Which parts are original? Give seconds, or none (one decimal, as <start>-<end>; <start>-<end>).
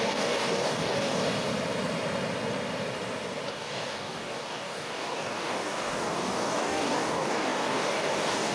1.2-3.5